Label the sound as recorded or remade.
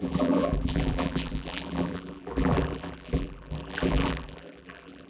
remade